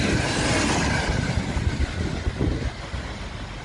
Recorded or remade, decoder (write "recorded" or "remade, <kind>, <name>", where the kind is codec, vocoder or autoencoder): recorded